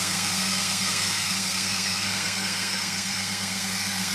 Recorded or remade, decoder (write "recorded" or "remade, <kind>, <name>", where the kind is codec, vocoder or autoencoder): remade, codec, SNAC